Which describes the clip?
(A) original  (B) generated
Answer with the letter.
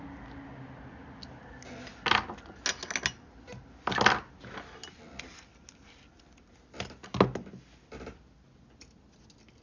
A